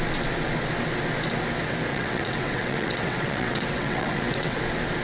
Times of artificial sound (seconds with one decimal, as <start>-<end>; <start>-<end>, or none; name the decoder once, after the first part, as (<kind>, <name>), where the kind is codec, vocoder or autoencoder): 1.9-4.6 (vocoder, WaveNeXt)